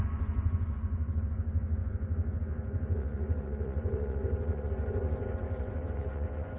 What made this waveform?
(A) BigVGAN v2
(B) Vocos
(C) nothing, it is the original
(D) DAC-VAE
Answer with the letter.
B